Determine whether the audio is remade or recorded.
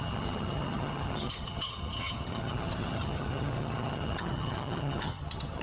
remade